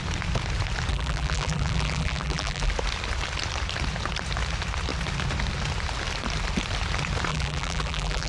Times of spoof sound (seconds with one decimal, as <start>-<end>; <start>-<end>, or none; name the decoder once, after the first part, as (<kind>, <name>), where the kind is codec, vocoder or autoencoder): 0.9-2.7 (vocoder, BigVGAN v2); 7.3-8.3